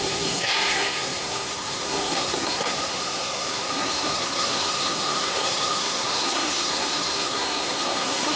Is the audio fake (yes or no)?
yes